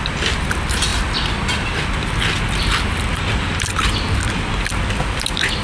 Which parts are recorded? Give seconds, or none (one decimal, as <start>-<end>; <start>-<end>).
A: 0.0-5.6